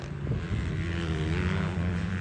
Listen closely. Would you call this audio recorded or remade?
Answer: recorded